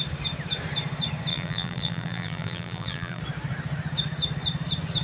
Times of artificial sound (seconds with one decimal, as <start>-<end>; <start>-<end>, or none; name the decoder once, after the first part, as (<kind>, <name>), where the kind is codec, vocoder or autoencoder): 1.3-3.2 (vocoder, BigVGAN v2)